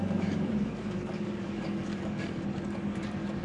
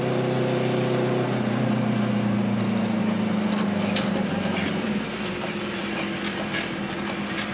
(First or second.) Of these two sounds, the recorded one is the second